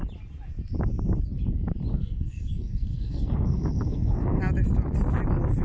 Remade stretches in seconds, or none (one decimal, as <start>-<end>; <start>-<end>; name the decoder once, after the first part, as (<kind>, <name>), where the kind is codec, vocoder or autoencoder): 1.9-4.4 (codec, SNAC)